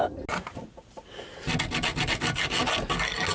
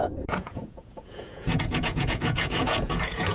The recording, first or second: first